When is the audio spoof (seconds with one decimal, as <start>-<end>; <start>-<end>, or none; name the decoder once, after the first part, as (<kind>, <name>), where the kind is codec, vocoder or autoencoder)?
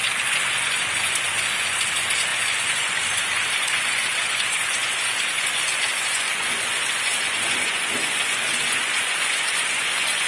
0.0-10.3 (vocoder, Vocos)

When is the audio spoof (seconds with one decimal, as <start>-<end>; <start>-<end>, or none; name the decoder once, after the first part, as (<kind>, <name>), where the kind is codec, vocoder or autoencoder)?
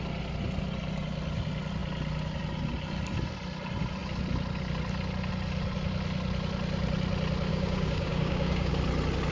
7.5-8.7 (codec, DAC)